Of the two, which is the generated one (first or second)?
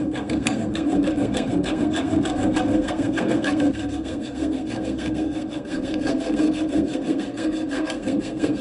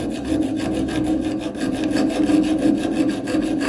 first